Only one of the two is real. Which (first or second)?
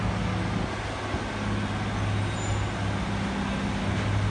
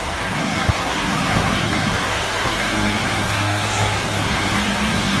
first